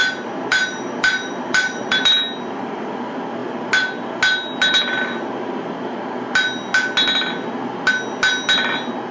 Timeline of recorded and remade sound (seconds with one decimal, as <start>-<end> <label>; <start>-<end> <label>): 0.0-2.1 remade; 2.1-9.1 recorded